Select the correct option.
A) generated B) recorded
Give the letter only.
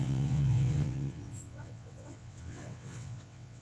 A